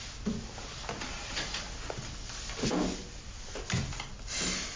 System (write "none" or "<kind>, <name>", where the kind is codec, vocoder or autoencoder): none